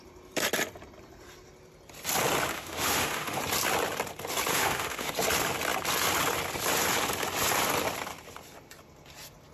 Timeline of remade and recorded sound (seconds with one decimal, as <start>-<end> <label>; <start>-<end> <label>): 0.0-2.5 recorded; 2.5-3.4 remade; 3.4-4.5 recorded; 4.5-5.1 remade; 5.1-9.5 recorded